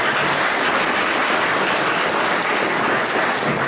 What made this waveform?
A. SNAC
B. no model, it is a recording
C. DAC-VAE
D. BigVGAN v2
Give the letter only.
B